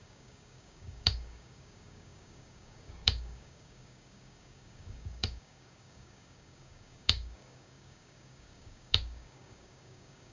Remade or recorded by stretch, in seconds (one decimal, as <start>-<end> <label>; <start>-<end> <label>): 0.0-10.3 remade